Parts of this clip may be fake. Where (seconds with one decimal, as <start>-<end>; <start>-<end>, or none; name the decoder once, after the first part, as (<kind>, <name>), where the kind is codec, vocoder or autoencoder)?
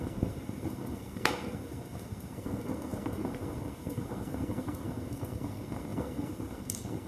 0.0-7.1 (codec, SNAC)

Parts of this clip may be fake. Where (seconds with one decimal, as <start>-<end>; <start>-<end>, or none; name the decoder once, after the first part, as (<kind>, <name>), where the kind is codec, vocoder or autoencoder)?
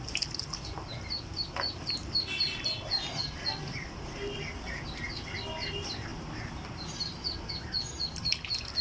none